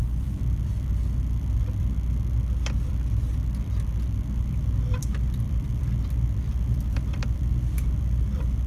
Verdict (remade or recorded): remade